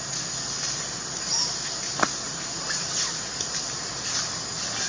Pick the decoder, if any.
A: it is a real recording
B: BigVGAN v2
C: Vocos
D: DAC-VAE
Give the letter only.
A